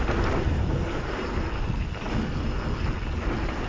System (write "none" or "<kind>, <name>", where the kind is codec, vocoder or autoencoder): none